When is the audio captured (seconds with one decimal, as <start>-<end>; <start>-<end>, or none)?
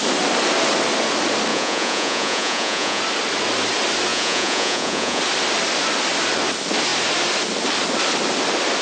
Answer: 0.0-1.5; 3.0-4.1; 5.2-8.8